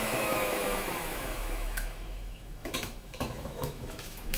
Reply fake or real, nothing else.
fake